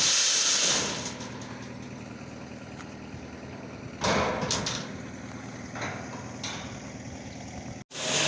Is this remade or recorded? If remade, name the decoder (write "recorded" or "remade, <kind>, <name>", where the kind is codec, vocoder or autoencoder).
recorded